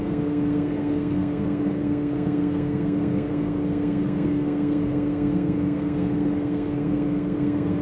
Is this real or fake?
fake